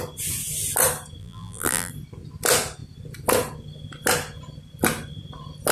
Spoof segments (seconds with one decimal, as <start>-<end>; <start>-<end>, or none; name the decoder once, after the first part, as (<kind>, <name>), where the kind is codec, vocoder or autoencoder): 1.2-1.9 (vocoder, BigVGAN v2)